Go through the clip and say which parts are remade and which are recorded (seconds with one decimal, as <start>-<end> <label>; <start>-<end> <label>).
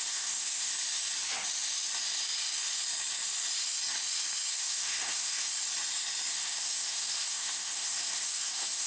0.0-0.7 remade; 0.7-4.5 recorded; 4.5-5.5 remade; 5.5-6.3 recorded; 6.3-8.9 remade